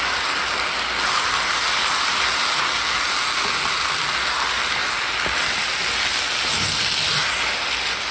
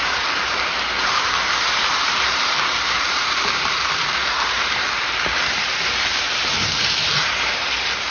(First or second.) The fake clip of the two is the second